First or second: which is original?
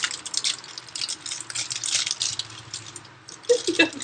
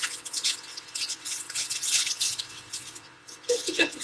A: first